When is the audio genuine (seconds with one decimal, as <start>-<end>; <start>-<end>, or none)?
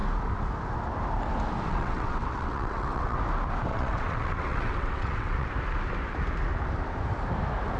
0.0-1.7; 3.2-3.7; 5.5-7.8